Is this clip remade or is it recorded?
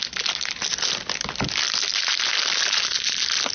recorded